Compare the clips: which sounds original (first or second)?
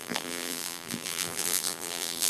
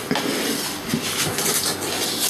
second